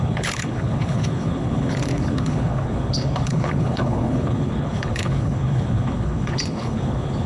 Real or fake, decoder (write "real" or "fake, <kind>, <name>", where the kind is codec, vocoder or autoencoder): fake, codec, HILCodec